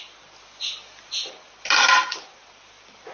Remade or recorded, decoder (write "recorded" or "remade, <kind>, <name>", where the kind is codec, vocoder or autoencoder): recorded